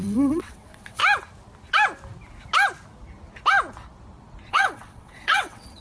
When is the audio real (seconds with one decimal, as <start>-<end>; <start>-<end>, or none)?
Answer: 1.0-4.5